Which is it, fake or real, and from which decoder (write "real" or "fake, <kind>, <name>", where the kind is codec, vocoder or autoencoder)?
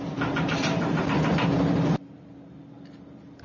real